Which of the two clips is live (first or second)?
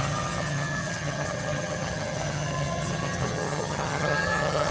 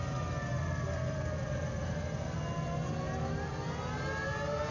second